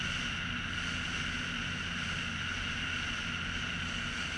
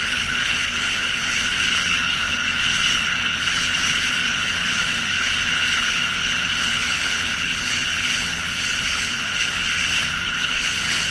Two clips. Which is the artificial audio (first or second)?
second